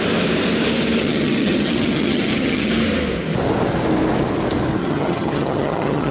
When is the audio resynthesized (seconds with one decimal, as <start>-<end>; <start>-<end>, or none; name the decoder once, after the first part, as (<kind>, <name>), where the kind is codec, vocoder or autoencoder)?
1.0-2.7 (vocoder, HiFi-GAN); 4.8-6.1